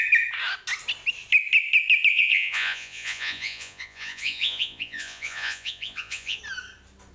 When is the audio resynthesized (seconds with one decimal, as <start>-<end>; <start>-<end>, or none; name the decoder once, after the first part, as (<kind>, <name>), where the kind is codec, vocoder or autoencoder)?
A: 2.1-6.4 (vocoder, Vocos)